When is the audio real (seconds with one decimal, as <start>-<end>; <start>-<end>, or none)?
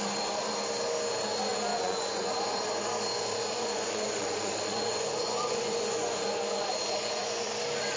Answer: 0.0-1.7; 2.3-3.1; 7.5-8.0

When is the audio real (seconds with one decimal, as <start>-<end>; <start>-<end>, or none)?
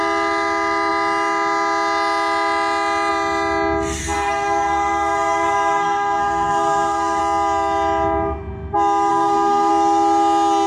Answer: 0.0-4.0; 7.2-9.1; 9.7-10.7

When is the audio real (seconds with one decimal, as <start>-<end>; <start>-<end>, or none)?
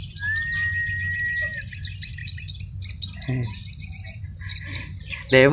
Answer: 0.0-5.5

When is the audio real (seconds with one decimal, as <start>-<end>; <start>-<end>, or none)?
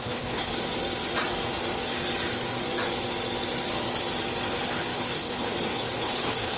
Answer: 0.5-4.5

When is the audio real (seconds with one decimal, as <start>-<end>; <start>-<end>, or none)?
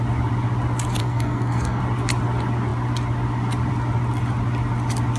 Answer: 0.0-1.0; 1.8-5.2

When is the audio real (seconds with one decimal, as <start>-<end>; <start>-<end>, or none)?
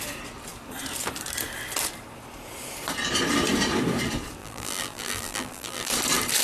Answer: 0.0-4.4; 5.9-6.4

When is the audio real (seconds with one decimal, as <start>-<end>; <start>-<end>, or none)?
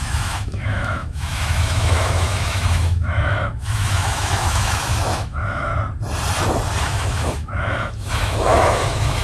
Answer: 5.7-6.8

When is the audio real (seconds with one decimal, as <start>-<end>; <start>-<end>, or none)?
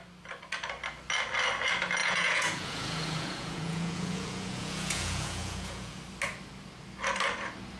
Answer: 0.0-2.0; 6.0-7.8